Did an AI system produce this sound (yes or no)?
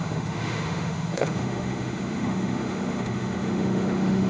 yes